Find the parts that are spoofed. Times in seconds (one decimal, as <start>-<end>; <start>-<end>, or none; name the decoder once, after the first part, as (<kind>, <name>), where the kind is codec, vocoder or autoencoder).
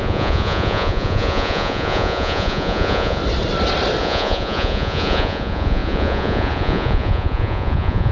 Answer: 0.0-3.2 (vocoder, Vocos); 4.0-8.1